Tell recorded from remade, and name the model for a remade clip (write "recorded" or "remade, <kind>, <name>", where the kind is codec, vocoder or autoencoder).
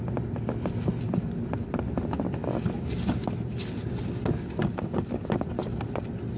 recorded